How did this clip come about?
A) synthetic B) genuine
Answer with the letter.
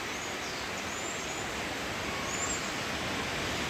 B